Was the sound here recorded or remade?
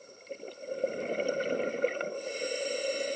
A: recorded